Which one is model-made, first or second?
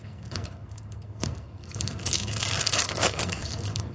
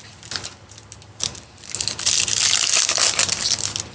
first